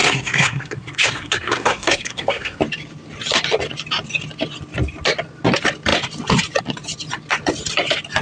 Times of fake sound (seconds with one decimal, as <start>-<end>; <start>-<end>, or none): 0.0-2.6